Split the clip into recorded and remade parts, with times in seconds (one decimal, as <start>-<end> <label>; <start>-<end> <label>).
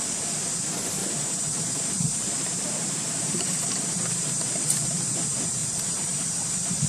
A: 0.0-1.0 recorded; 1.0-4.4 remade; 4.4-5.6 recorded; 5.6-6.3 remade; 6.3-6.9 recorded